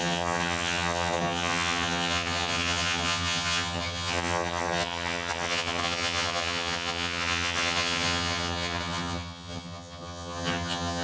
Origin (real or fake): fake